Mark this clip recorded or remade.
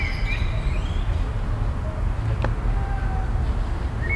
recorded